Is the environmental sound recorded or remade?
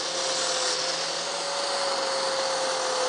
recorded